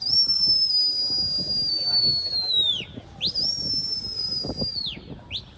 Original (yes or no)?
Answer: yes